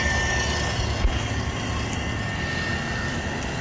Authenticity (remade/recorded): recorded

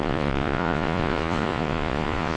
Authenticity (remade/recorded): remade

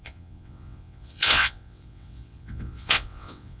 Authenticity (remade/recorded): remade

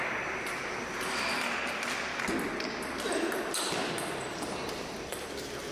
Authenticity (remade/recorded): recorded